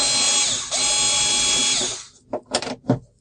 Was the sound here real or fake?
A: real